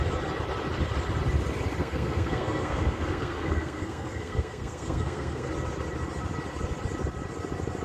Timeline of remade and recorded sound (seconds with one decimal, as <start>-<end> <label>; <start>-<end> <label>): 0.0-1.8 recorded; 1.8-5.5 remade; 5.5-7.8 recorded